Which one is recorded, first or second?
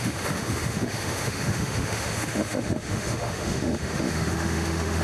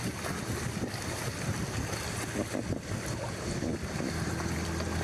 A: second